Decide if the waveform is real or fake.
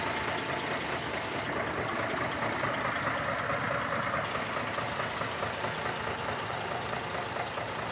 real